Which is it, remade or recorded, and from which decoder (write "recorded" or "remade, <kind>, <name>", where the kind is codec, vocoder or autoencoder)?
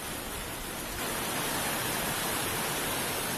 recorded